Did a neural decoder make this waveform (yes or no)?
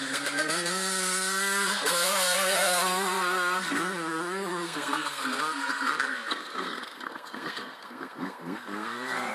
yes